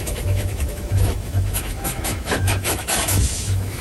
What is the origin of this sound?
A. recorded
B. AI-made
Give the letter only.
B